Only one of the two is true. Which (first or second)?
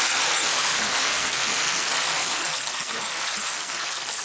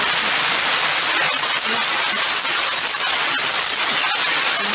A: second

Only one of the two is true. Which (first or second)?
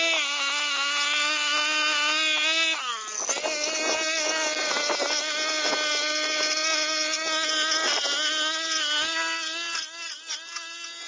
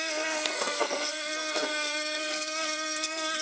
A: first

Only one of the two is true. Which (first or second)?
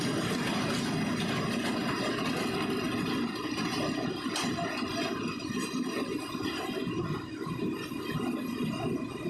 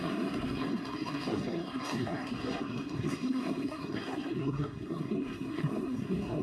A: first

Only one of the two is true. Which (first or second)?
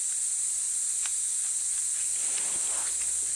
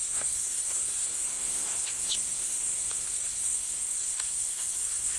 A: first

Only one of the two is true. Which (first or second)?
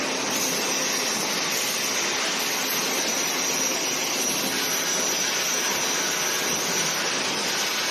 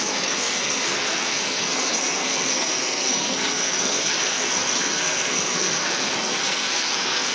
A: first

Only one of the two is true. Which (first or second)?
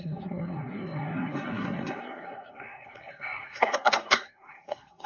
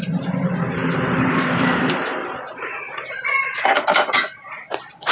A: second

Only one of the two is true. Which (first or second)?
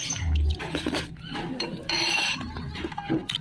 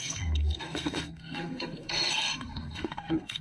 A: first